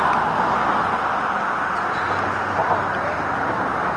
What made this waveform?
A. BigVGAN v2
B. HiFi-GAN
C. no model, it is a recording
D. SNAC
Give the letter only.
C